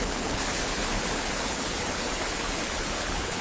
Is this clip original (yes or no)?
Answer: no